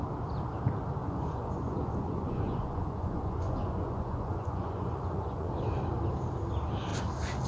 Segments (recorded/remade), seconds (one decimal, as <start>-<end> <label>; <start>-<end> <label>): 0.0-1.0 recorded; 1.0-5.5 remade; 5.5-7.5 recorded